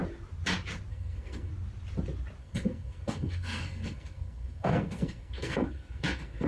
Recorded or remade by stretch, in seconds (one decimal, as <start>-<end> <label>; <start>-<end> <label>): 0.0-0.9 recorded; 0.9-1.5 remade; 1.5-2.4 recorded; 2.4-6.5 remade